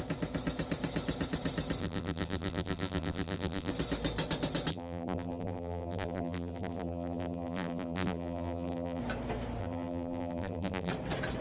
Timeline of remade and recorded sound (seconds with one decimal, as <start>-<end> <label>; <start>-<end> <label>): 0.0-1.8 recorded; 1.8-3.7 remade; 3.7-4.7 recorded; 4.7-9.0 remade; 9.0-9.6 recorded; 9.6-10.9 remade; 10.9-11.4 recorded